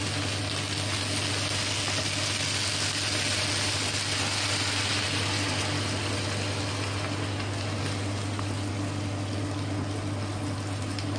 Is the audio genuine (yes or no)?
yes